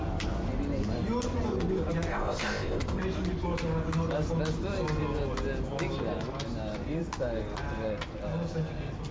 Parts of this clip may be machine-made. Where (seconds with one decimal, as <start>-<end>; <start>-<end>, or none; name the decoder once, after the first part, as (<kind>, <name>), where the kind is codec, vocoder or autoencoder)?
2.1-3.0 (codec, ZipCodec)